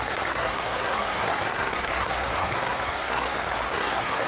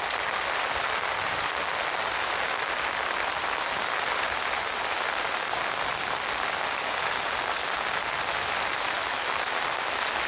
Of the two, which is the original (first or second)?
second